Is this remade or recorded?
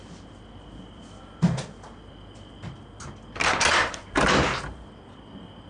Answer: recorded